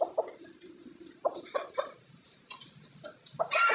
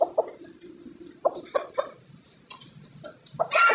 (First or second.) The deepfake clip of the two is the first